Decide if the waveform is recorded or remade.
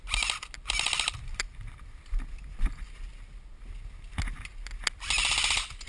recorded